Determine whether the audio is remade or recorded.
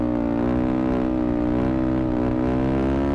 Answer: recorded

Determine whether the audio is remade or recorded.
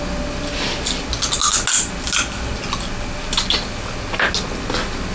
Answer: recorded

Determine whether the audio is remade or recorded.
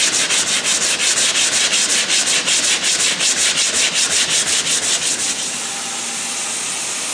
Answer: recorded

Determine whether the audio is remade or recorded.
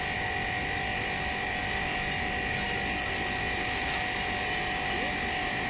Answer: recorded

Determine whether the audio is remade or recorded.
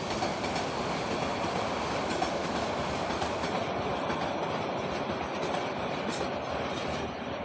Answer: recorded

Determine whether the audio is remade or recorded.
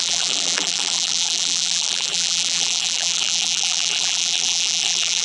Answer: remade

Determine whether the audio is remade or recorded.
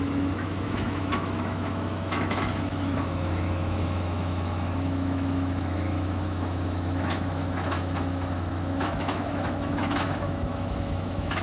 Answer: remade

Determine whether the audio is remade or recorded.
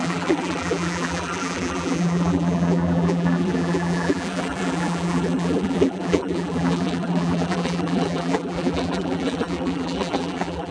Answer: remade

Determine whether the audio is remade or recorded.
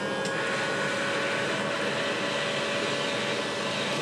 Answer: recorded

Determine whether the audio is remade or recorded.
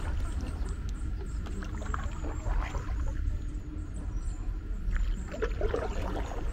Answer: recorded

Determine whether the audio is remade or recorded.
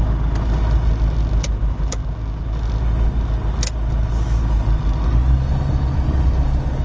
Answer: recorded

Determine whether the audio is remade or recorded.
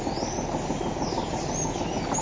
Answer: recorded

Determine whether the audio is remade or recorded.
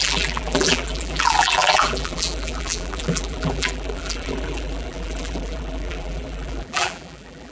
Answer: remade